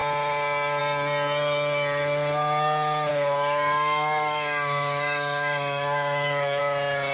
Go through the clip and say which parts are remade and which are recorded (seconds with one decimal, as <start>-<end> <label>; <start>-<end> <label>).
0.0-3.1 recorded; 3.1-6.6 remade; 6.6-7.1 recorded

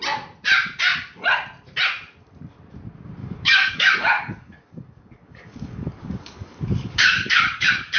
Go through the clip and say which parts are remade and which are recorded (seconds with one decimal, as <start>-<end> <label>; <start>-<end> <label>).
0.0-3.2 recorded; 3.2-8.0 remade

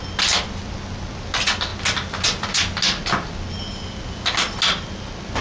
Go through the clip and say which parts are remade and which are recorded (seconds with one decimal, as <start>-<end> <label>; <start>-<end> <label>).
0.0-5.4 recorded

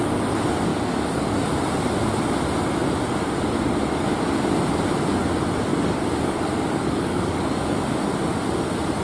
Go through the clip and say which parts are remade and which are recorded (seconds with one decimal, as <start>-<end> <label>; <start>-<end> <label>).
0.0-0.7 recorded; 0.7-1.5 remade; 1.5-5.7 recorded; 5.7-7.6 remade; 7.6-9.0 recorded

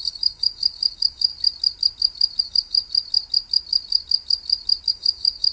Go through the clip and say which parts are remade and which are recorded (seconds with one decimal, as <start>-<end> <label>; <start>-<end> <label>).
0.0-1.3 remade; 1.3-2.4 recorded; 2.4-2.8 remade; 2.8-4.9 recorded; 4.9-5.5 remade